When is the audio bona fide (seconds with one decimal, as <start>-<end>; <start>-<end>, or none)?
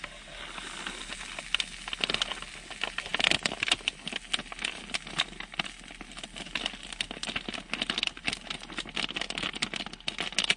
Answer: 0.0-10.6